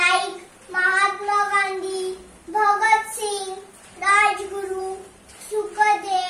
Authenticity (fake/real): fake